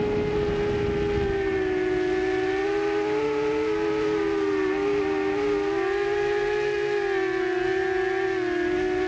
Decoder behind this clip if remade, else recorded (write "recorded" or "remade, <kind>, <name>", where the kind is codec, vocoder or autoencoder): recorded